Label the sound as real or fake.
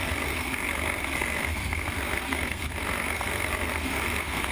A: fake